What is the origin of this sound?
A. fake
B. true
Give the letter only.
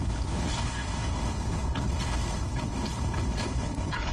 A